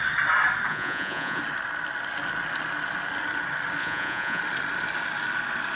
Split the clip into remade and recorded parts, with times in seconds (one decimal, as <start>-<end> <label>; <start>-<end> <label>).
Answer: 0.0-0.7 recorded; 0.7-1.4 remade; 1.4-3.8 recorded; 3.8-4.4 remade; 4.4-5.8 recorded

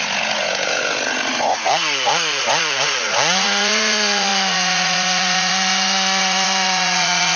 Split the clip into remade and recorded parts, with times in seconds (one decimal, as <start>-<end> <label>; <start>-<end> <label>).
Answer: 0.0-7.4 remade

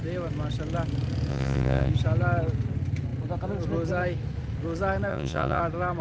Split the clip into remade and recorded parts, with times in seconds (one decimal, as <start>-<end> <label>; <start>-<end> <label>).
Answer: 0.0-1.3 recorded; 1.3-1.9 remade; 1.9-5.1 recorded; 5.1-5.6 remade; 5.6-6.0 recorded

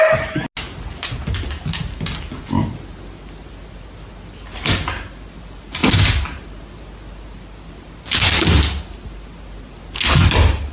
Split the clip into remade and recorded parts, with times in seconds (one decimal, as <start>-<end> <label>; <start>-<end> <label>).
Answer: 0.0-10.7 recorded

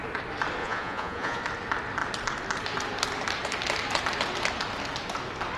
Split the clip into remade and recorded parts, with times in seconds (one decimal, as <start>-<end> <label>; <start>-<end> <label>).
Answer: 0.0-0.6 recorded; 0.6-1.4 remade; 1.4-5.6 recorded